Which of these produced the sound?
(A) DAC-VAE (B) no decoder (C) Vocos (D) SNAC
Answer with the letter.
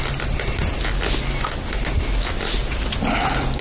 B